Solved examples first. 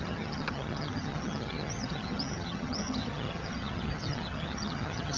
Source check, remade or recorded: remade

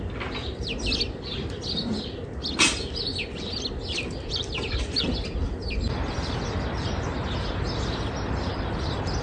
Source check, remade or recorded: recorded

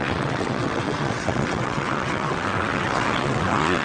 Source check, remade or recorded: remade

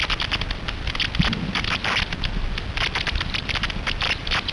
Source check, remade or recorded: recorded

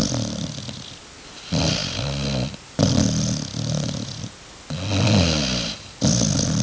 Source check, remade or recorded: recorded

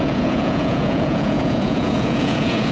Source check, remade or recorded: remade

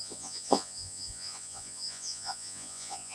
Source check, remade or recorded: remade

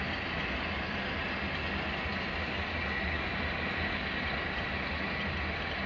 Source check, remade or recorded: recorded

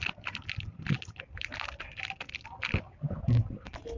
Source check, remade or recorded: recorded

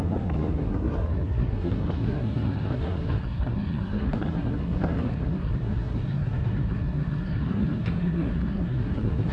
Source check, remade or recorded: remade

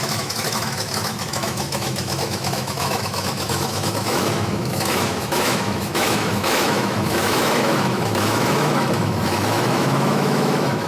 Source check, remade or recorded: remade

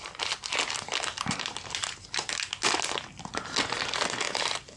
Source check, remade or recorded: recorded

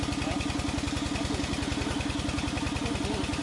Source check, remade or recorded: recorded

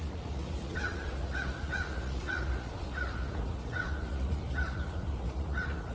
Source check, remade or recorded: remade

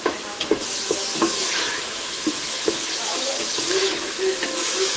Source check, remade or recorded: remade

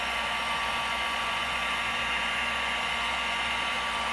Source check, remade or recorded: remade